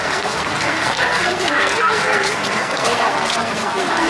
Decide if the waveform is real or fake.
fake